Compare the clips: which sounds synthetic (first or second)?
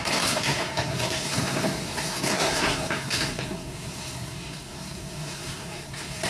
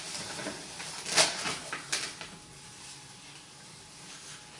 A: first